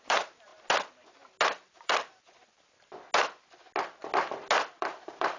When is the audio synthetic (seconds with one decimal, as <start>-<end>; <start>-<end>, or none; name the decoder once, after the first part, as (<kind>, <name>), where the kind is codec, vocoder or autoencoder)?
0.0-0.5 (vocoder, BigVGAN v2); 1.7-2.4; 4.7-5.4